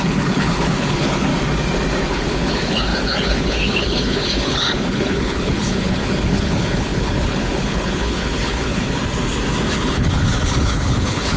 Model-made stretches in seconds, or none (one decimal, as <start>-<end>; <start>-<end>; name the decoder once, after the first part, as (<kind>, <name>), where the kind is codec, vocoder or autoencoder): 0.0-1.3 (codec, HILCodec); 2.1-9.0; 9.7-11.4